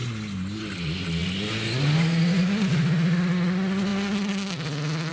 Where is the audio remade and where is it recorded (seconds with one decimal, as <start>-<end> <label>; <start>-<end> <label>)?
0.0-5.1 recorded